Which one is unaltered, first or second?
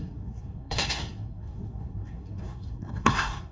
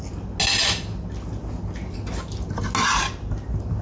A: second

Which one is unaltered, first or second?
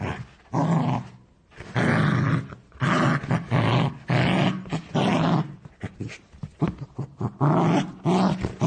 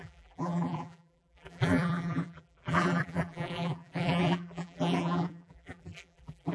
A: first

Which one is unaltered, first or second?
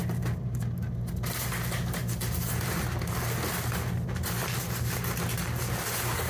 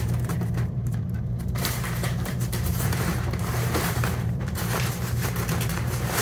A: first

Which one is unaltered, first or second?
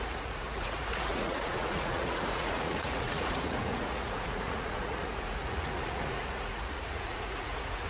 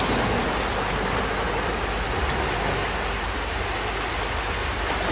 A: second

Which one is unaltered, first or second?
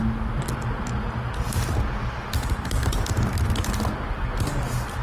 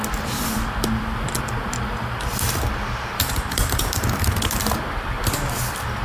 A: first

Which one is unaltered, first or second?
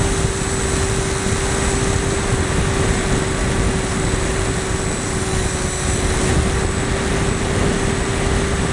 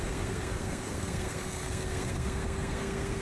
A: first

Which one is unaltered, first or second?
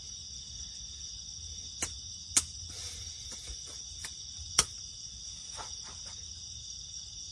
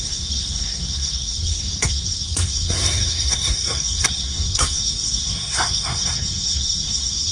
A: first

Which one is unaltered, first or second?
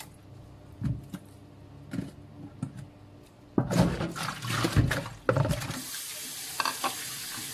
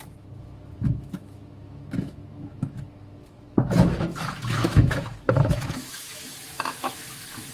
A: first